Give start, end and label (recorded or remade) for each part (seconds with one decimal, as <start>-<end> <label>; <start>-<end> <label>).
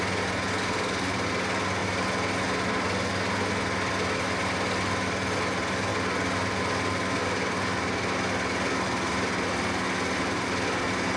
0.0-11.2 recorded